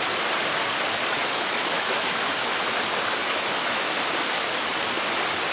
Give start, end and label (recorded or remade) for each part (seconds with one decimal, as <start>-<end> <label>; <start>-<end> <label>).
0.0-1.2 recorded; 1.2-2.3 remade; 2.3-3.2 recorded; 3.2-4.0 remade; 4.0-5.5 recorded